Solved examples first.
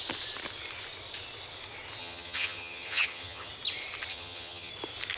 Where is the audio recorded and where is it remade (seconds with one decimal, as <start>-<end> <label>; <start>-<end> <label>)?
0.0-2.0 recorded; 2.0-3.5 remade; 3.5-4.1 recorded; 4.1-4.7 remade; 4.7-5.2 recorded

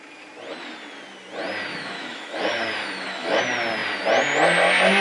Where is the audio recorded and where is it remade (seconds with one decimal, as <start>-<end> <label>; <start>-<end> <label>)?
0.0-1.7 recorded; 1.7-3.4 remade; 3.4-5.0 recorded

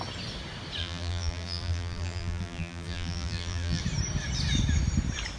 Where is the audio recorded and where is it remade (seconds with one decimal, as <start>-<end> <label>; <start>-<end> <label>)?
0.0-0.8 recorded; 0.8-3.8 remade; 3.8-5.4 recorded

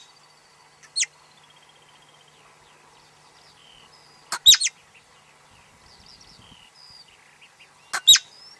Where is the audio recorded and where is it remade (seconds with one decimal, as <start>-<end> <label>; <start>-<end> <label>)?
0.0-8.6 recorded